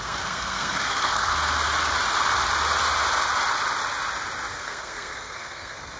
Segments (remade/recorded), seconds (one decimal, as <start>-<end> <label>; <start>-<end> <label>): 0.0-1.3 remade; 1.3-4.5 recorded; 4.5-6.0 remade